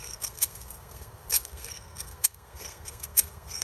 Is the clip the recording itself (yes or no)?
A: no